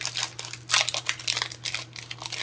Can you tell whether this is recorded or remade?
recorded